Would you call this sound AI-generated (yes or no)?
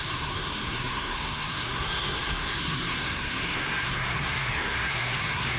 yes